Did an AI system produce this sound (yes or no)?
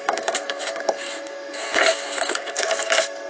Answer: yes